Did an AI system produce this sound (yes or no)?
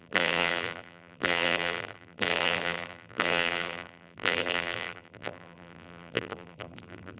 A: yes